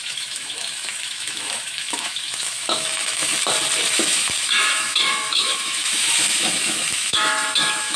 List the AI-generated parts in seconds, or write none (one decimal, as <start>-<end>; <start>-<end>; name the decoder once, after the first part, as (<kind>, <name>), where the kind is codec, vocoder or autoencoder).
0.0-3.3 (autoencoder, DAC-VAE); 3.9-8.0

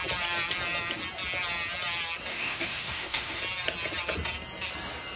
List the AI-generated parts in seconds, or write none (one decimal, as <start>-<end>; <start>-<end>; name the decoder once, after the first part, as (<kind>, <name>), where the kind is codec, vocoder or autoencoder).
2.3-3.4 (autoencoder, DAC-VAE)

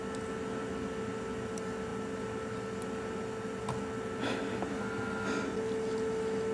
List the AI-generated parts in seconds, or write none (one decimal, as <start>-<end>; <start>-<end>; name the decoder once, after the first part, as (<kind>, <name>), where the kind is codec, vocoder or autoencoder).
none

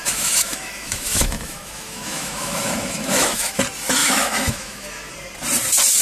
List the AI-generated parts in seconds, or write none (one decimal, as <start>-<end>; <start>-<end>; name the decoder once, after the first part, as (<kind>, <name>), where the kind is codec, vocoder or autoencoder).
0.0-3.6 (autoencoder, DAC-VAE); 4.0-5.1

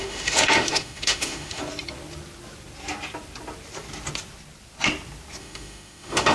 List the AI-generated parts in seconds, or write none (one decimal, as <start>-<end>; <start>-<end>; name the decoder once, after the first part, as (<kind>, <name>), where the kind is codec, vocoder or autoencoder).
0.0-1.6 (autoencoder, DAC-VAE); 5.4-6.3

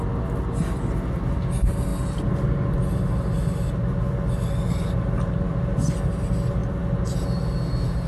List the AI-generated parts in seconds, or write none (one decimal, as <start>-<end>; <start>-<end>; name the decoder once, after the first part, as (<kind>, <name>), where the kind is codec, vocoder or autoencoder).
none

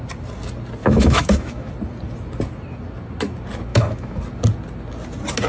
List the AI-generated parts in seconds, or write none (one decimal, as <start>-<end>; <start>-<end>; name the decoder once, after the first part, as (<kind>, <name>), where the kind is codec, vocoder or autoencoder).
0.8-1.7 (autoencoder, DAC-VAE); 3.7-4.2